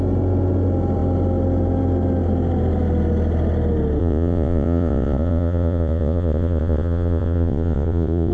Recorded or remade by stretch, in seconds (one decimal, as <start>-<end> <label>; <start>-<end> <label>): 0.0-4.0 recorded; 4.0-8.3 remade